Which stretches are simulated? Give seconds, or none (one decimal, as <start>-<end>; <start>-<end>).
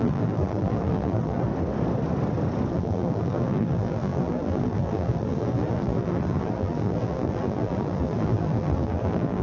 0.0-1.5; 2.7-9.4